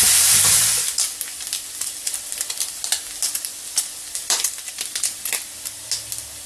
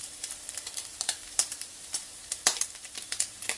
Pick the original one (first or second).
first